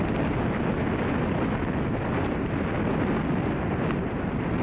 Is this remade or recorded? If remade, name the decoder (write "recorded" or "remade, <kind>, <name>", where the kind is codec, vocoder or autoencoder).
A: recorded